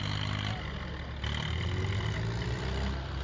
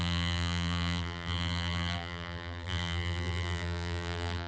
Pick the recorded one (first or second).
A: first